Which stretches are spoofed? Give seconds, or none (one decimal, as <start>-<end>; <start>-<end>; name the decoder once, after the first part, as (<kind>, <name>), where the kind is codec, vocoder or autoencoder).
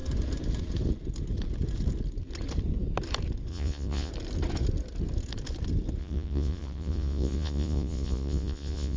3.5-4.1 (vocoder, Vocos); 6.0-9.0